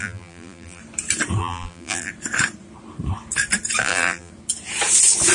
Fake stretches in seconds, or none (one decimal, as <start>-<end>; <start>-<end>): 0.0-0.8; 1.4-2.1; 3.8-4.3